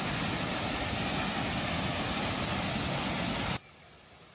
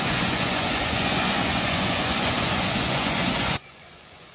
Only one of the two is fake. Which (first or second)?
second